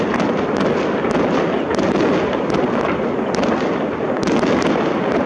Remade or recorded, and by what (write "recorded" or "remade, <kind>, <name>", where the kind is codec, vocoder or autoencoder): recorded